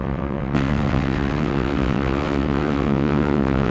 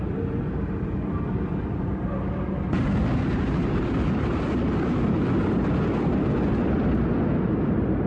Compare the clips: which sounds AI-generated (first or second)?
first